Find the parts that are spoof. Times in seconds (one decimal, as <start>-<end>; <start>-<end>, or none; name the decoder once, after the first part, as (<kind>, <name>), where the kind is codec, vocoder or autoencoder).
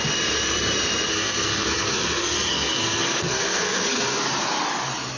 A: 1.1-4.2 (codec, SNAC)